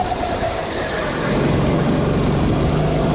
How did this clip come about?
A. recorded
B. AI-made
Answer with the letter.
A